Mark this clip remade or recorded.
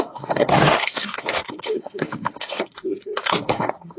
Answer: remade